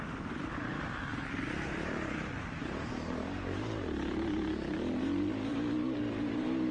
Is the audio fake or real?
fake